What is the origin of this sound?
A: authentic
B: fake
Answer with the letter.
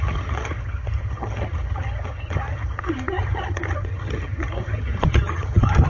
B